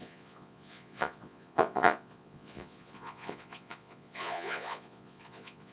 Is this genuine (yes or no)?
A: no